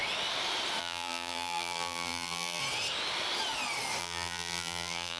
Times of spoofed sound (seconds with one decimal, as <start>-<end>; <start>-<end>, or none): 0.8-2.6; 4.0-5.2